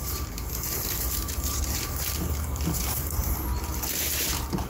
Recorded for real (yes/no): no